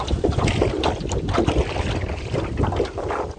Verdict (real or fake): real